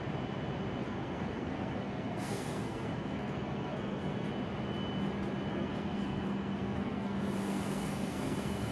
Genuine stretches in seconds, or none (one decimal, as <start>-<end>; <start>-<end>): 0.0-0.8; 4.3-5.5